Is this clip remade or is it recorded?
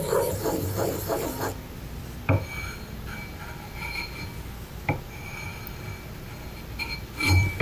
recorded